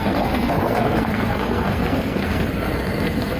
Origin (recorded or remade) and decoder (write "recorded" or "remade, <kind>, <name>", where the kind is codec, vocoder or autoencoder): remade, codec, SNAC